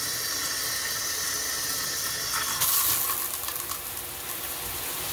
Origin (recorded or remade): recorded